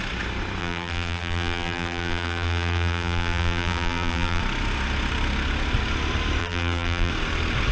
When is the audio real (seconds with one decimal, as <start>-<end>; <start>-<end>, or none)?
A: 0.0-0.6; 4.4-6.4; 7.1-7.7